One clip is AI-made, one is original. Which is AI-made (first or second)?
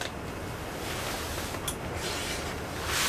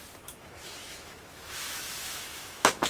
second